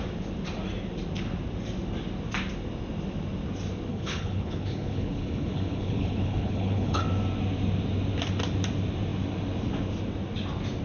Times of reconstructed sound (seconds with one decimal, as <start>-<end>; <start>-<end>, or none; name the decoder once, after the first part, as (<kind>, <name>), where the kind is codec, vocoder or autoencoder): 3.9-7.0 (codec, HILCodec)